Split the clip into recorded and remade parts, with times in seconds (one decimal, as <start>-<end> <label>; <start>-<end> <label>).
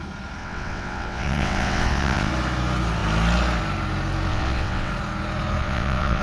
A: 0.0-0.4 recorded; 0.4-2.3 remade; 2.3-4.3 recorded; 4.3-4.9 remade; 4.9-5.6 recorded; 5.6-6.2 remade